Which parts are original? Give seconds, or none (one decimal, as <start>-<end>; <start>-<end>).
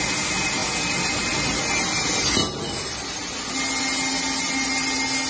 0.0-5.3